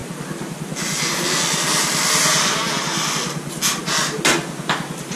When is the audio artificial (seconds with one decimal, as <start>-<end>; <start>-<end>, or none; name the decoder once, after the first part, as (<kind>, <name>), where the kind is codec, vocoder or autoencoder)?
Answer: none